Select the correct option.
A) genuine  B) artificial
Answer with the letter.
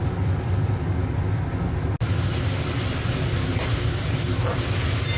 A